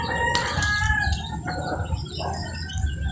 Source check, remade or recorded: recorded